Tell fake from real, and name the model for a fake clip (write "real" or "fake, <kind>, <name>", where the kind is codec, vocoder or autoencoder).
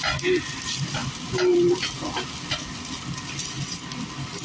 real